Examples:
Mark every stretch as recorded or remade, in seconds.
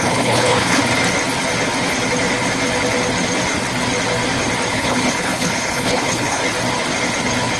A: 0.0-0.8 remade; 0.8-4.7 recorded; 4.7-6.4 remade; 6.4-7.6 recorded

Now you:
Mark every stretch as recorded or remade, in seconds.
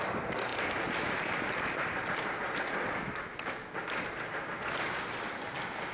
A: 0.0-5.9 recorded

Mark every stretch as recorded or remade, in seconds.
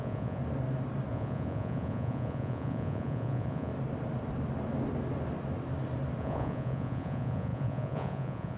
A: 0.0-0.4 remade; 0.4-1.1 recorded; 1.1-3.7 remade; 3.7-6.2 recorded; 6.2-8.6 remade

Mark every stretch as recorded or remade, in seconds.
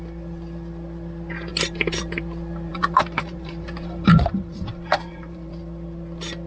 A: 0.0-1.5 recorded; 1.5-2.2 remade; 2.2-2.7 recorded; 2.7-5.5 remade; 5.5-6.5 recorded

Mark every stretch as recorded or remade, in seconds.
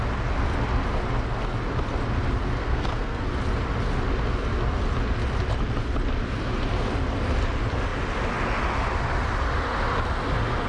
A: 0.0-2.6 recorded; 2.6-3.2 remade; 3.2-10.7 recorded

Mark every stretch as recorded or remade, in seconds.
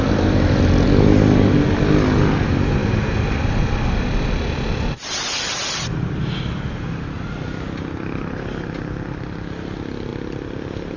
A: 0.0-11.0 recorded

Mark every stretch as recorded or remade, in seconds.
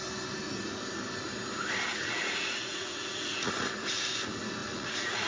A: 0.0-1.9 recorded; 1.9-3.5 remade; 3.5-4.6 recorded; 4.6-5.3 remade